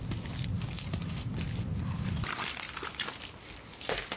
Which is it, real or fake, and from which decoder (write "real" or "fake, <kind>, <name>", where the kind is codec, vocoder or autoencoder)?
real